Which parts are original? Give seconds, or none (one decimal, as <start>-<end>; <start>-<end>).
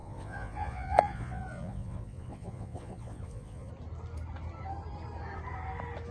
3.7-6.1